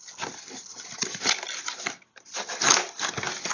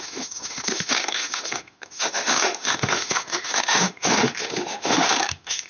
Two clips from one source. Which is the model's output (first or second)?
second